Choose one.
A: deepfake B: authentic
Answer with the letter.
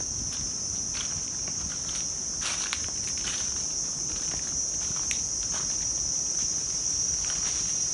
B